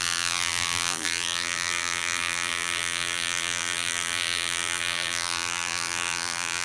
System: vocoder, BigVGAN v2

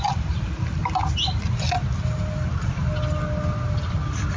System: none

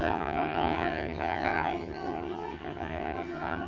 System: vocoder, HiFi-GAN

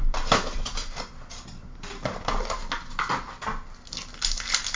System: none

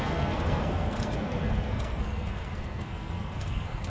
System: codec, SNAC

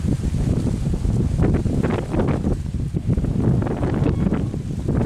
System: none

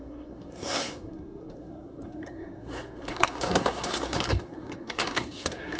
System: codec, SNAC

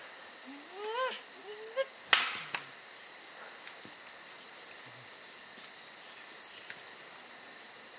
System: none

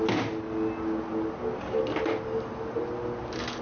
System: none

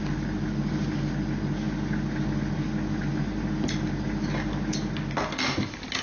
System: none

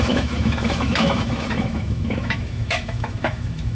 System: autoencoder, DAC-VAE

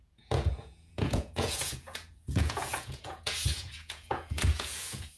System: vocoder, Vocos